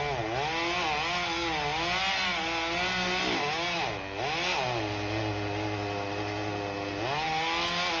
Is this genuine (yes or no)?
yes